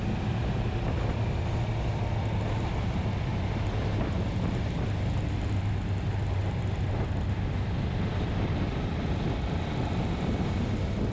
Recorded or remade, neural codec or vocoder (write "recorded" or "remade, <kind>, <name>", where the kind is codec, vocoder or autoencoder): recorded